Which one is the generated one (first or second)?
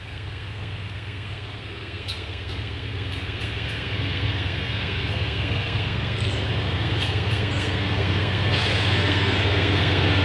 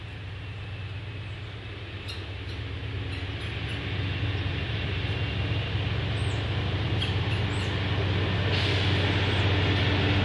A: first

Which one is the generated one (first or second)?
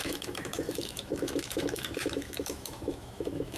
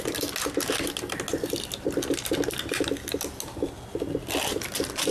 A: first